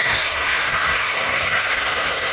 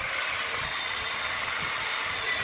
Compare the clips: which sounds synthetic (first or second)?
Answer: first